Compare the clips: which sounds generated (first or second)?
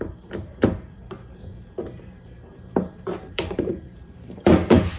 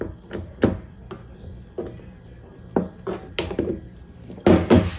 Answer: first